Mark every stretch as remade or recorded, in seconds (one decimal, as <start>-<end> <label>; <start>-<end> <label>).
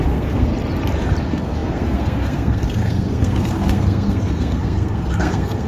0.0-0.5 remade; 0.5-1.2 recorded; 1.2-5.7 remade